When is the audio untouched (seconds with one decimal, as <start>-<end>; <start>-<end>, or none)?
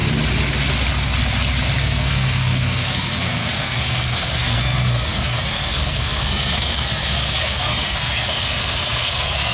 0.0-1.8